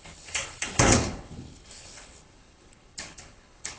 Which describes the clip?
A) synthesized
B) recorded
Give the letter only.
A